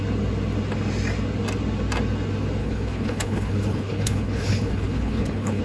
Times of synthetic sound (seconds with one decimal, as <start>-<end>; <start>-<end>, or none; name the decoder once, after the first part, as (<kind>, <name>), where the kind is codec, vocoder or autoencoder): 2.6-5.6 (codec, HILCodec)